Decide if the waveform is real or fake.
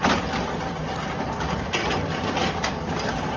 real